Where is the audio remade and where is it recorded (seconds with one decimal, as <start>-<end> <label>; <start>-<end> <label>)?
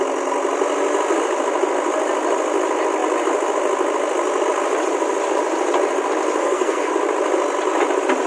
0.0-6.4 recorded; 6.4-6.9 remade; 6.9-8.3 recorded